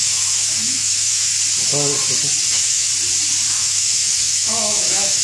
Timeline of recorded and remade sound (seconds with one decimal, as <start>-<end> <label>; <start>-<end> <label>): 0.0-1.3 remade; 1.3-2.4 recorded; 2.4-2.9 remade; 2.9-3.5 recorded; 3.5-5.2 remade